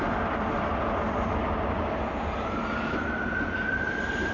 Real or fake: real